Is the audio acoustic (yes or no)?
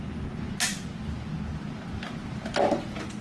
yes